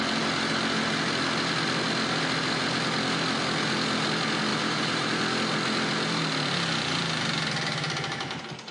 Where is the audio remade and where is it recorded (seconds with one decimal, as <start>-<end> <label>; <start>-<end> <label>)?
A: 0.0-4.5 recorded; 4.5-5.2 remade; 5.2-8.7 recorded